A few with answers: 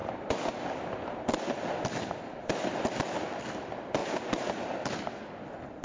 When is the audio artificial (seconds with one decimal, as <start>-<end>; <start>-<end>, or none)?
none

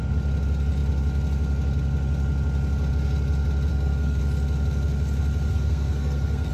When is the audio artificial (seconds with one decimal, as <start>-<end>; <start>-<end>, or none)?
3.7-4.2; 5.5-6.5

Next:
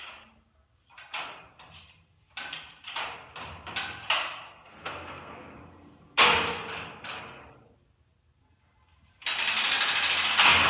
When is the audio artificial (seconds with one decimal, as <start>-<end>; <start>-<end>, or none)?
4.8-5.3

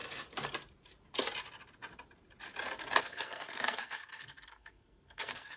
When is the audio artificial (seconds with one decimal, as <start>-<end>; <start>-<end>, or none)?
3.0-5.6

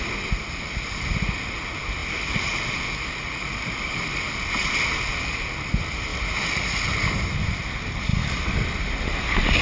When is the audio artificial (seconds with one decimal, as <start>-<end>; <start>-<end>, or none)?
none

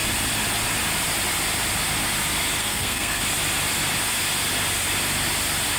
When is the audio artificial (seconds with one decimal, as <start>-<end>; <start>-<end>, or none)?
2.6-3.2

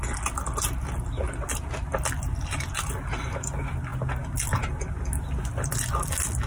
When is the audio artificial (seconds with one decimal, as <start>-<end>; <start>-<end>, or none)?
none